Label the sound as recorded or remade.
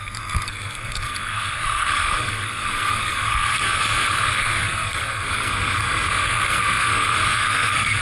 remade